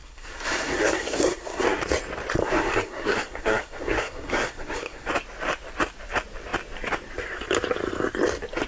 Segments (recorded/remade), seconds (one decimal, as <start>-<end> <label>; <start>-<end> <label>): 0.0-1.8 remade; 1.8-2.4 recorded; 2.4-5.1 remade; 5.1-8.7 recorded